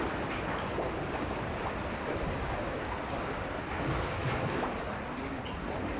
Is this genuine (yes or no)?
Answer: yes